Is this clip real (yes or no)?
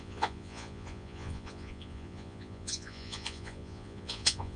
no